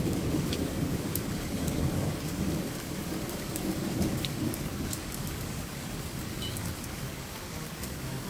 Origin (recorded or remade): remade